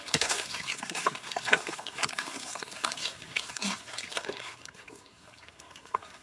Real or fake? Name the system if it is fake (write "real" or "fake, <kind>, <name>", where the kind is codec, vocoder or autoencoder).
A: fake, codec, SNAC